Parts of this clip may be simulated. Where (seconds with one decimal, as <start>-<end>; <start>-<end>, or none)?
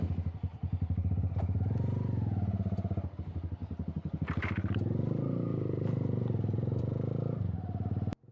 0.5-1.4; 3.6-6.8